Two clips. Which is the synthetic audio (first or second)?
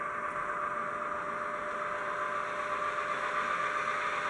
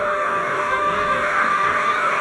second